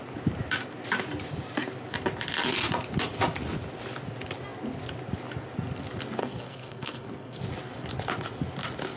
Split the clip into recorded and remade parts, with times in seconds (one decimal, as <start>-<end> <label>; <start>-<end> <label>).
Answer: 0.0-6.2 recorded; 6.2-7.4 remade; 7.4-9.0 recorded